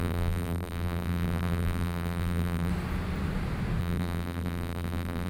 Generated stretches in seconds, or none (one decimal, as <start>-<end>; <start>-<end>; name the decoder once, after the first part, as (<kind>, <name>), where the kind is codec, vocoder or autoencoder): 0.0-2.7 (vocoder, BigVGAN v2); 3.8-5.3

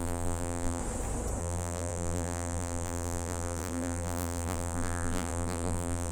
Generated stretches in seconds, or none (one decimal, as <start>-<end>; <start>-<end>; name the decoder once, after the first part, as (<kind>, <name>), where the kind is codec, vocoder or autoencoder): 0.0-0.8 (vocoder, BigVGAN v2); 1.4-6.1

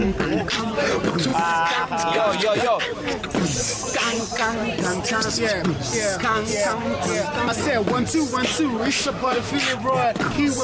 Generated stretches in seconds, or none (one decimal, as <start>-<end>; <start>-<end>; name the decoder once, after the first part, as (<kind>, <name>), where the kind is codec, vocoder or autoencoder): 8.9-9.5 (autoencoder, DAC-VAE)

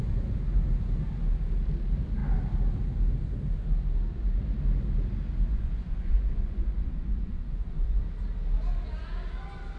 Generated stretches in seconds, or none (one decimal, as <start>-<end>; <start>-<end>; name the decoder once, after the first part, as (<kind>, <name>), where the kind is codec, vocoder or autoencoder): 5.5-8.0 (vocoder, Vocos)

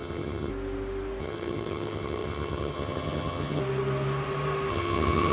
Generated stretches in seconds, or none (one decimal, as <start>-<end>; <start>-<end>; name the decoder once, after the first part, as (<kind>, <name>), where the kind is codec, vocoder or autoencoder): 0.0-0.5 (vocoder, HiFi-GAN); 1.2-3.6; 4.7-5.3

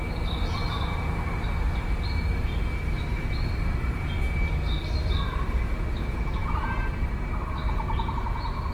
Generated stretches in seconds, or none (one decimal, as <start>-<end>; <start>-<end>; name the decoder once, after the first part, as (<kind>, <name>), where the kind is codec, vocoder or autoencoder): none

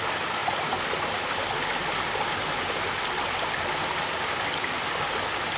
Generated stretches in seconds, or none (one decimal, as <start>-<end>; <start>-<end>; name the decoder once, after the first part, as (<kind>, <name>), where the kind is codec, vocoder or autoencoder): none